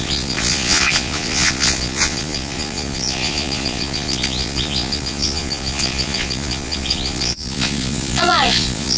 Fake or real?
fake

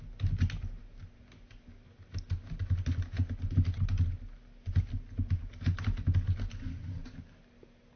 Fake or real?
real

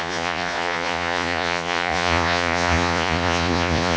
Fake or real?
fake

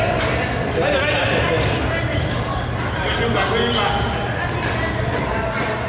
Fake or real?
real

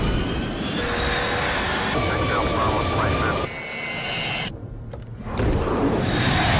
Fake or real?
real